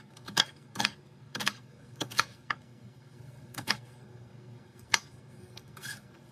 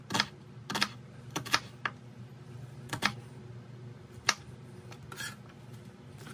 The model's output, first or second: first